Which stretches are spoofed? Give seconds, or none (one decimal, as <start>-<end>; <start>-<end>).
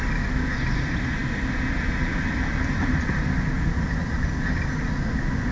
none